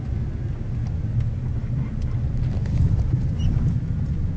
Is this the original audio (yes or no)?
yes